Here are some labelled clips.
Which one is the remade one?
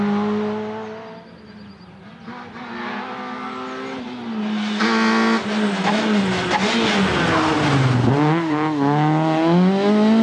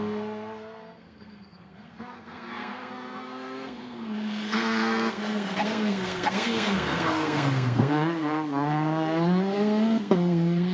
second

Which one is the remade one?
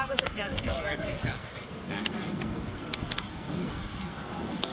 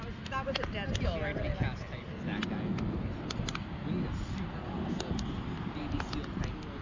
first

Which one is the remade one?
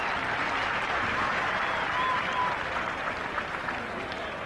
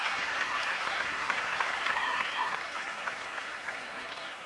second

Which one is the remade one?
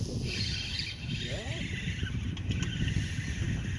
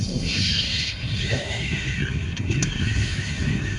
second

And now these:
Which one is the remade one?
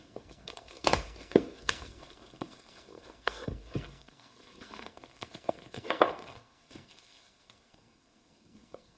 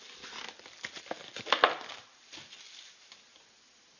first